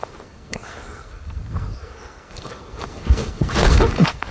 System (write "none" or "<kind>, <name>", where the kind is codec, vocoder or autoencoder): codec, SNAC